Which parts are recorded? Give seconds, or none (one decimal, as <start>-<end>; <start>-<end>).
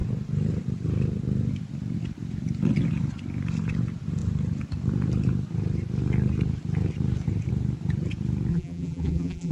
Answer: 0.0-8.5